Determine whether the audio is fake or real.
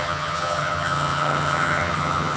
fake